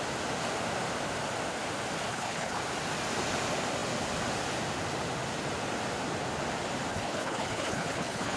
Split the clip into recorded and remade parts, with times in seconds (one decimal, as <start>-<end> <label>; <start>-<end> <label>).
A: 0.0-2.1 recorded; 2.1-2.6 remade; 2.6-6.9 recorded; 6.9-8.4 remade